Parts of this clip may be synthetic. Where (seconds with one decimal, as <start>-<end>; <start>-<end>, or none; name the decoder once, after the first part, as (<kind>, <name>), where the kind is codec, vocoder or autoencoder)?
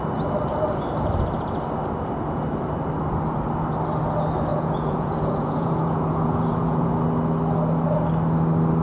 4.5-6.9 (vocoder, Vocos)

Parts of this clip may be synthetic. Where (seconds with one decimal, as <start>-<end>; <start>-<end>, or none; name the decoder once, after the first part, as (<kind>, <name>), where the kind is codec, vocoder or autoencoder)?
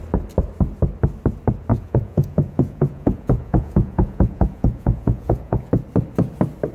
1.7-5.7 (vocoder, Vocos)